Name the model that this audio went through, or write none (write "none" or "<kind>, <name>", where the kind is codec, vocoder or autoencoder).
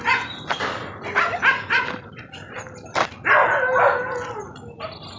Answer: none